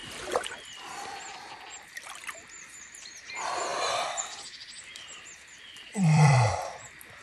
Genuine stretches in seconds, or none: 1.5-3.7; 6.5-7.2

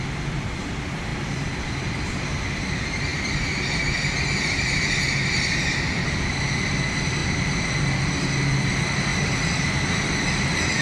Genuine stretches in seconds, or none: 0.0-1.1; 2.2-3.1; 3.7-9.1; 9.7-10.8

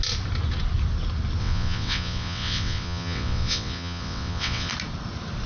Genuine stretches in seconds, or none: 0.0-1.4; 4.7-5.5

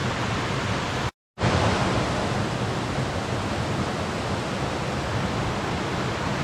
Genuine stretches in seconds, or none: 0.0-6.4

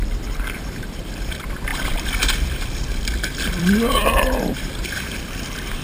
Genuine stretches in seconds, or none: 0.0-0.6